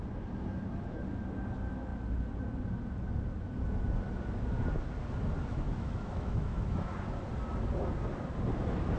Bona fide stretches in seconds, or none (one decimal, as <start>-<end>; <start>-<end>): 0.0-5.5; 6.9-9.0